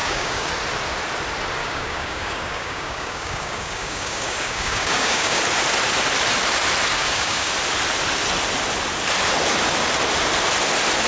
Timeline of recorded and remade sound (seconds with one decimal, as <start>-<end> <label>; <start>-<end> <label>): 0.0-0.5 remade; 0.5-1.6 recorded; 1.6-5.4 remade; 5.4-6.9 recorded; 6.9-7.5 remade; 7.5-11.1 recorded